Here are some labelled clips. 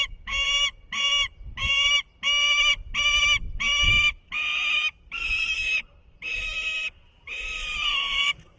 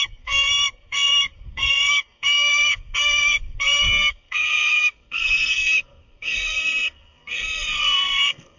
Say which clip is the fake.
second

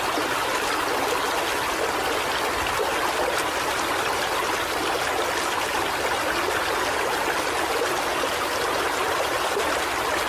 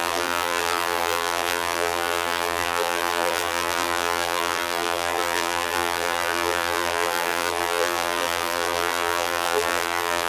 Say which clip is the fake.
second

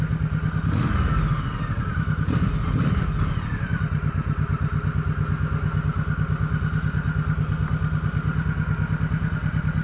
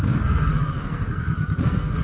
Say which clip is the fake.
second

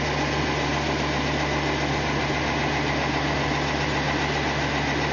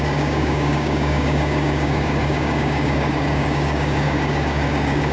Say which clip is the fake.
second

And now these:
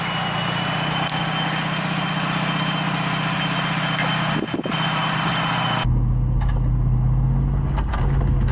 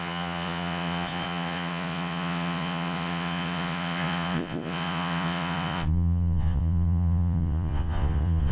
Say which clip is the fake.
second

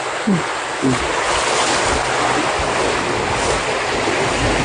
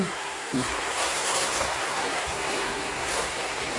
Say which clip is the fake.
second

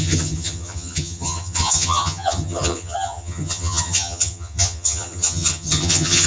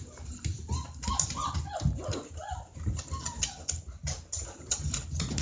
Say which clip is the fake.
first